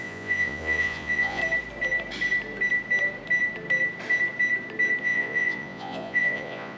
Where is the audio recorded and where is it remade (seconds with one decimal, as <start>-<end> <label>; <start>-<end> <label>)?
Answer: 0.0-1.4 remade; 1.4-5.0 recorded; 5.0-6.8 remade